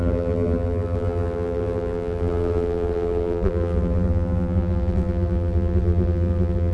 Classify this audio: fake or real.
fake